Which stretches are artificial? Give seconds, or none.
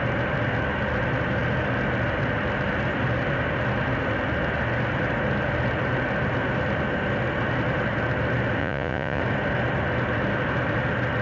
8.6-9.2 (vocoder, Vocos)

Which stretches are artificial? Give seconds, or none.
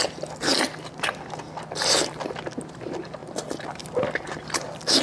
0.0-0.5 (vocoder, BigVGAN v2); 1.8-3.2; 4.1-5.0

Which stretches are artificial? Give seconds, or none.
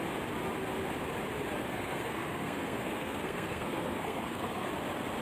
1.6-4.7 (codec, SNAC)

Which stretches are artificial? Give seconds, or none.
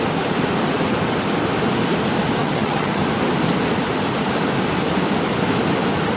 2.4-3.0 (vocoder, HiFi-GAN)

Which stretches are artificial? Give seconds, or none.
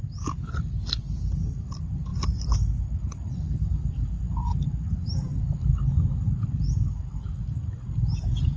none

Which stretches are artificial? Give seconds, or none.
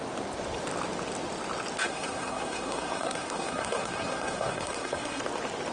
1.8-5.2 (codec, SNAC)